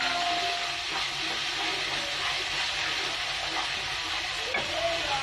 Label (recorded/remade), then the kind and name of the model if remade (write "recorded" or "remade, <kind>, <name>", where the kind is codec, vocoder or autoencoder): recorded